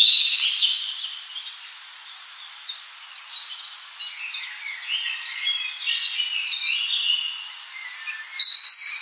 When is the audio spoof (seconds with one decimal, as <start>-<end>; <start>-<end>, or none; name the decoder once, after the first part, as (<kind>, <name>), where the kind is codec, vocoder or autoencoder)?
none